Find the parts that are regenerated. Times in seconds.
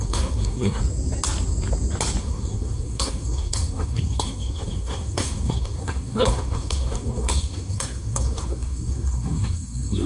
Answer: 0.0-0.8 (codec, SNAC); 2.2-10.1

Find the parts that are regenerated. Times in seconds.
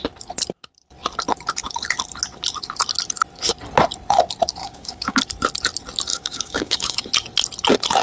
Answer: 4.6-5.2 (codec, DAC); 6.1-7.1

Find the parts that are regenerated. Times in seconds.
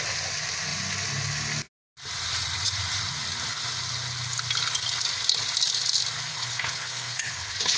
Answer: 6.3-7.8 (codec, HILCodec)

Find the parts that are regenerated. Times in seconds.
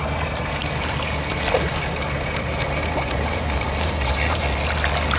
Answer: none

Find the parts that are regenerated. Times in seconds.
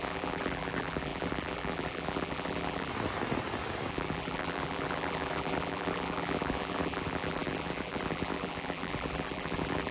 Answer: 0.0-2.9 (vocoder, BigVGAN v2); 3.9-9.9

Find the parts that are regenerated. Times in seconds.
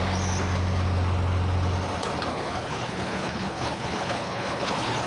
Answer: 2.3-5.1 (codec, HILCodec)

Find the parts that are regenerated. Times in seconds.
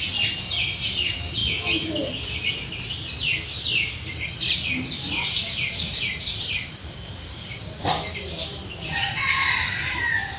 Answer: 6.8-8.0 (codec, DAC)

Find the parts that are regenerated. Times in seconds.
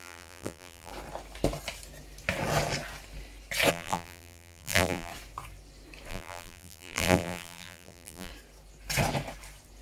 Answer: 0.0-0.9 (vocoder, BigVGAN v2); 3.7-5.1; 6.1-8.3